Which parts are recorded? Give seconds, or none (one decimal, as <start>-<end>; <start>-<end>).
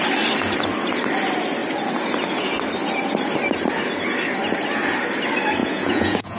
0.0-5.6